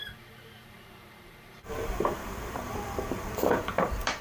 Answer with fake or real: fake